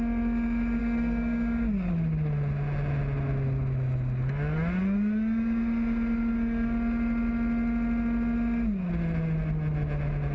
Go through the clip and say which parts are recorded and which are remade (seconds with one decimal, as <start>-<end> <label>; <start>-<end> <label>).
0.0-0.8 recorded; 0.8-1.9 remade; 1.9-10.3 recorded